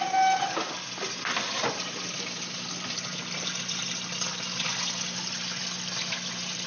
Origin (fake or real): real